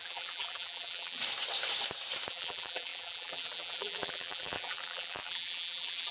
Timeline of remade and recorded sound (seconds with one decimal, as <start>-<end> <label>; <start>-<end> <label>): 0.0-1.2 remade; 1.2-2.3 recorded; 2.3-6.1 remade